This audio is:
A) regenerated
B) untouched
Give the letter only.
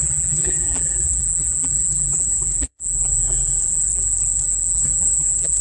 A